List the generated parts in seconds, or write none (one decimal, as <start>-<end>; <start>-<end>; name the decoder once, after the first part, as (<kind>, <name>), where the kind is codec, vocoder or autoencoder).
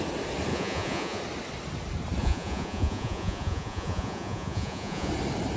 0.5-1.2 (vocoder, Vocos); 2.2-5.1